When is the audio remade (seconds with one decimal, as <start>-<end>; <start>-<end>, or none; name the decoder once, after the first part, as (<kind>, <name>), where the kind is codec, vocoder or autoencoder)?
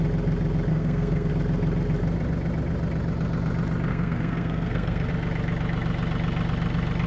0.7-1.3 (codec, SNAC); 3.9-5.1